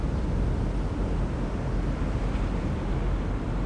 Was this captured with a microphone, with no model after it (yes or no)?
yes